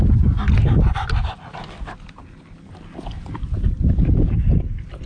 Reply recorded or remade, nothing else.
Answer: recorded